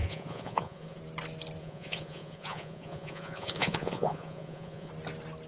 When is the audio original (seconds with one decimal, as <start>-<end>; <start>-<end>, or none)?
1.0-1.6; 4.9-5.5